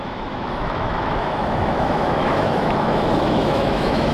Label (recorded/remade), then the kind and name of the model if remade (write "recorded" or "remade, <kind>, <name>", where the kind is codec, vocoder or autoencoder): remade, autoencoder, DAC-VAE